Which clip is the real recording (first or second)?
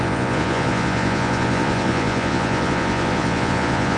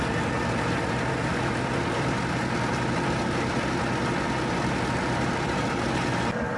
second